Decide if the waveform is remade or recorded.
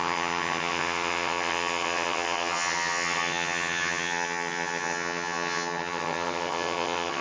remade